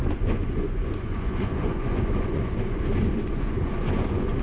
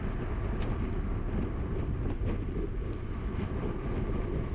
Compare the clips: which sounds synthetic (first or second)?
first